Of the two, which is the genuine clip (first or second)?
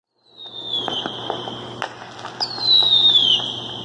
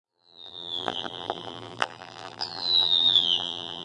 first